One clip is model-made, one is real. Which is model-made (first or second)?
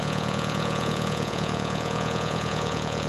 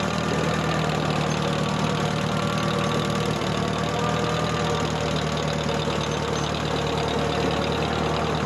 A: first